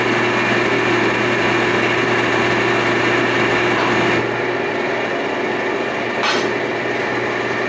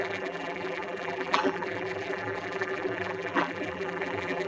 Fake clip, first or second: second